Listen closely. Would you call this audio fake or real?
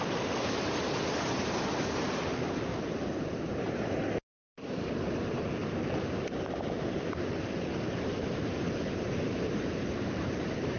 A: fake